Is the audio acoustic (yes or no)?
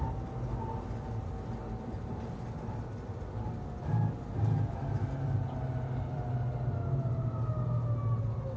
yes